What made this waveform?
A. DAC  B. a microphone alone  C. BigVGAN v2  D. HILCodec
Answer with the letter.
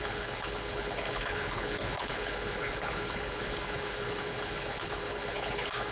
D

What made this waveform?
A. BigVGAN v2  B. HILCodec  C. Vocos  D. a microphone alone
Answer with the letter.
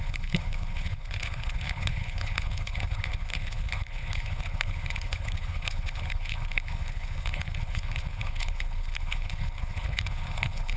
B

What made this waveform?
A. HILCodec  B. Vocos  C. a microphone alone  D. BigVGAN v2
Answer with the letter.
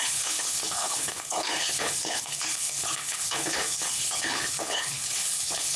A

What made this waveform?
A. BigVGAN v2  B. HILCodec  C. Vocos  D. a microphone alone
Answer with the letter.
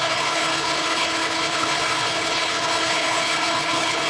B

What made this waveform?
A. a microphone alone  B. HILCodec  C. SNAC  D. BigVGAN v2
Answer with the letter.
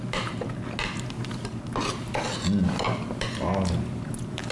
A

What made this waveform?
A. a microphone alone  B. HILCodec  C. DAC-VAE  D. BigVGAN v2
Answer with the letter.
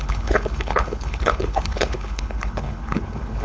B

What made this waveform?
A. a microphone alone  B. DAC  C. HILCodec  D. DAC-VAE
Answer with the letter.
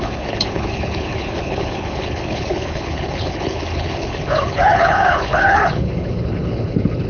C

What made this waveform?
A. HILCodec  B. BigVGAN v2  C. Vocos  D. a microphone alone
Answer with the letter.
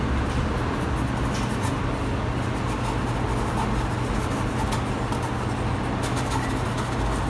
D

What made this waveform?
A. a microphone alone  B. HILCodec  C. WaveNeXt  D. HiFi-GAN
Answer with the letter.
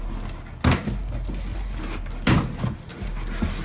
A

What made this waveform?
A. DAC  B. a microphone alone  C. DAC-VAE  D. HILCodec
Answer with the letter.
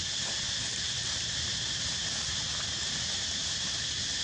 B